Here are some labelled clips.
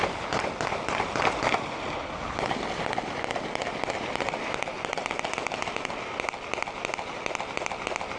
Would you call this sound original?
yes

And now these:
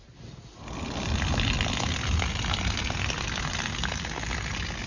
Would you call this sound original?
yes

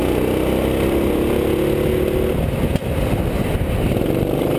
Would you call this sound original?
yes